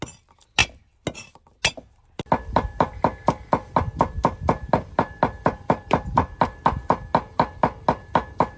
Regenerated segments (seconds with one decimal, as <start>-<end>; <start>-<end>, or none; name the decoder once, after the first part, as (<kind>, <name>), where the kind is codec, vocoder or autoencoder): none